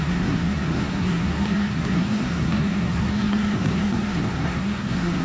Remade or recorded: remade